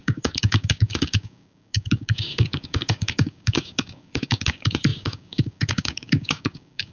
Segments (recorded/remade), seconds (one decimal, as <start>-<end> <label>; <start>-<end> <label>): 0.0-6.9 remade